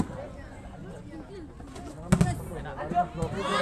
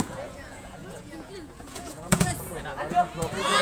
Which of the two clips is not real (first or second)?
second